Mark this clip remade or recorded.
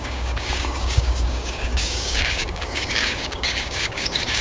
remade